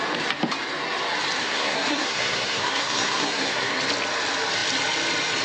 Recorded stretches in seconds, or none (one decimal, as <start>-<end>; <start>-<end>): 0.0-1.4; 3.8-5.4